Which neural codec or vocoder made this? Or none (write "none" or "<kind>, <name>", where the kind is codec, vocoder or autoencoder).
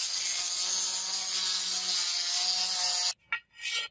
none